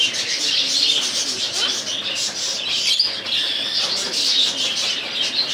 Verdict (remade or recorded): recorded